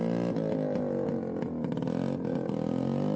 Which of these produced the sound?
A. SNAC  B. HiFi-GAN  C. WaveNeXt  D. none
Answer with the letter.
D